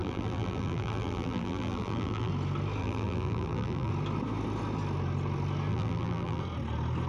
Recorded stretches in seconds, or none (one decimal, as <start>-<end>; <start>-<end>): 2.3-2.8; 3.9-5.7; 6.4-7.1